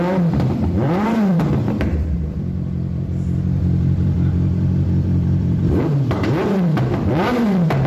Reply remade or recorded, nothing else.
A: remade